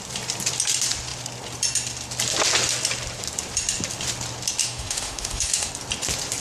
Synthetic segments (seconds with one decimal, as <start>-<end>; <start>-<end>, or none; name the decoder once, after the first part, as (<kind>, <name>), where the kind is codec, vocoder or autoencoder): 4.6-5.7 (autoencoder, DAC-VAE)